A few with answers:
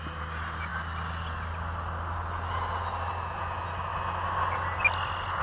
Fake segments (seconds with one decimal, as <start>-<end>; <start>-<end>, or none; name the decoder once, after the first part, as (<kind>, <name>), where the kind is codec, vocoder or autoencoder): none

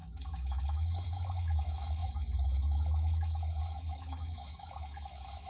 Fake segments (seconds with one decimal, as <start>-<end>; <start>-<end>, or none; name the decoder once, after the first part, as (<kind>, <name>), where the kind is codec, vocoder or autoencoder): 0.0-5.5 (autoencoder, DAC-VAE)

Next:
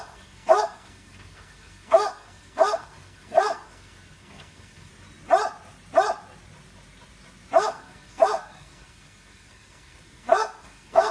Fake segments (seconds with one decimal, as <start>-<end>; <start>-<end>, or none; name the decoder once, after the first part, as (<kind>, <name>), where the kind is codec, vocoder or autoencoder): 0.0-4.9 (codec, SNAC); 7.6-11.1

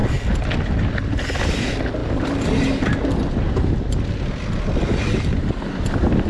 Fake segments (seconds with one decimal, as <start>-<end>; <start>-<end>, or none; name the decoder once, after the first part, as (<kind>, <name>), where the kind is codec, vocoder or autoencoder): none

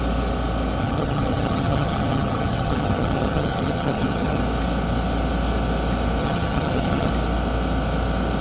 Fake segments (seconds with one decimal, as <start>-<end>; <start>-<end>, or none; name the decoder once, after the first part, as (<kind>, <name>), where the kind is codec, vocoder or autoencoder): 0.8-4.4 (vocoder, HiFi-GAN); 6.2-7.1